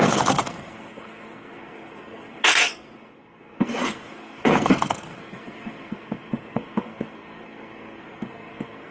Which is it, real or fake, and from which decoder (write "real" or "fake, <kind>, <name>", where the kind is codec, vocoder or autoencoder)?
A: fake, codec, SNAC